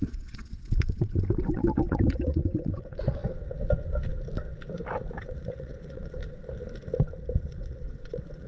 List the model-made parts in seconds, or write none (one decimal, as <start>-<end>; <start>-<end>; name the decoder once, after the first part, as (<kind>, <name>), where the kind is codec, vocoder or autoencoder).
0.0-3.2 (vocoder, WaveNeXt); 5.2-6.2; 7.4-8.5